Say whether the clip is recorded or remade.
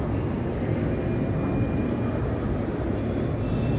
recorded